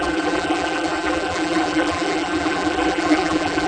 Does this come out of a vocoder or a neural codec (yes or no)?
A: yes